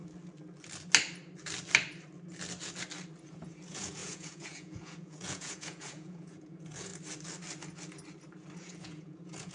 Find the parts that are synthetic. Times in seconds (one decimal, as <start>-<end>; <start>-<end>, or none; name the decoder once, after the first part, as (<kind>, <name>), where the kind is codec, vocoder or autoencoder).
3.3-6.9 (vocoder, Vocos); 8.6-9.5